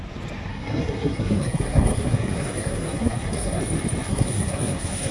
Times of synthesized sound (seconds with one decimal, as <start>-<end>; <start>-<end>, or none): 0.5-3.6; 4.1-5.1